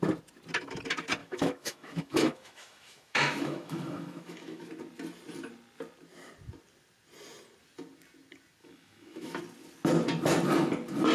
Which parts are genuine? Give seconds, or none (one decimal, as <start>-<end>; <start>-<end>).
0.0-1.2; 4.7-8.6; 9.4-11.1